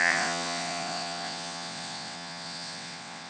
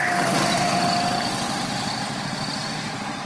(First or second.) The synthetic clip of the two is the first